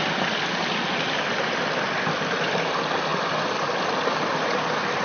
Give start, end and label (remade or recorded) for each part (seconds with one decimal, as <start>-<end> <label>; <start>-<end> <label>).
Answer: 0.0-5.0 recorded